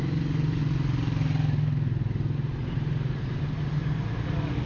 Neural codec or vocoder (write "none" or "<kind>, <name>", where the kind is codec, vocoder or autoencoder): none